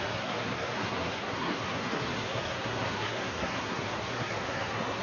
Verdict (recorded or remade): remade